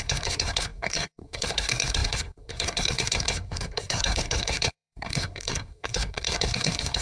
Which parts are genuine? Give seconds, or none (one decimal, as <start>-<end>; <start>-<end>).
none